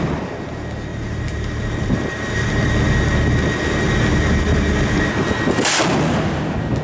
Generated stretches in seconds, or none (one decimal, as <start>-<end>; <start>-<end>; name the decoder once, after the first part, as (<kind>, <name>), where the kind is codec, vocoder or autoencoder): 0.9-2.5 (vocoder, BigVGAN v2)

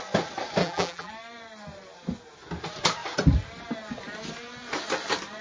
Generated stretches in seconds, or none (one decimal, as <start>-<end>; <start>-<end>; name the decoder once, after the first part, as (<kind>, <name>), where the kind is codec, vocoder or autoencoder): 0.6-1.1 (vocoder, BigVGAN v2)

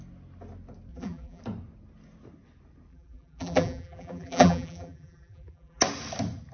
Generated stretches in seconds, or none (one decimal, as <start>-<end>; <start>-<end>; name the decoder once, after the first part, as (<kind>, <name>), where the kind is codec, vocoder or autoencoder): 0.9-1.4 (vocoder, BigVGAN v2); 2.9-5.8

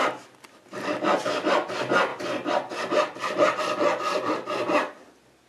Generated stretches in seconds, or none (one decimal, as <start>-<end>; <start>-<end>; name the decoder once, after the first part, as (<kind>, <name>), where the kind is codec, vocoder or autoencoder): none

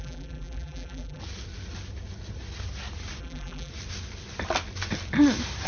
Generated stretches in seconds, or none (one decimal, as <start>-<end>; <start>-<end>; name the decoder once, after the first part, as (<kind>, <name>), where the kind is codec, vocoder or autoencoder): 0.0-1.2 (vocoder, BigVGAN v2); 3.2-3.7

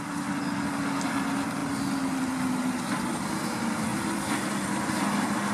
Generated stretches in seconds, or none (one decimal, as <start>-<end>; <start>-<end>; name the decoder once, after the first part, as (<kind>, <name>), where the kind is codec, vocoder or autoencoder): none

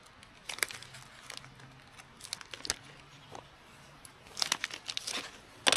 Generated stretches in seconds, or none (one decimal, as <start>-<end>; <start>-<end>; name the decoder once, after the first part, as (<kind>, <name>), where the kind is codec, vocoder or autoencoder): 3.1-4.6 (vocoder, BigVGAN v2)

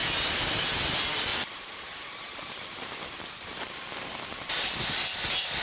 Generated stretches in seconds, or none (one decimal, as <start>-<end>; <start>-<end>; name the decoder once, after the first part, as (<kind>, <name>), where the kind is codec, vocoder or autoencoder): 0.0-0.5 (vocoder, BigVGAN v2); 1.3-4.7